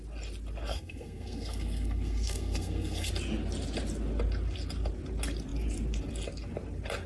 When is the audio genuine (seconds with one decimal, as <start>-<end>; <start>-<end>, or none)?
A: 0.0-0.7; 3.1-7.1